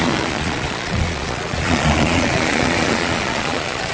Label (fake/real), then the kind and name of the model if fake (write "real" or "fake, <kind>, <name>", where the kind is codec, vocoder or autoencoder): fake, vocoder, Vocos